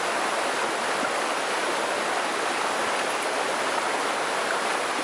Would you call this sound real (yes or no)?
yes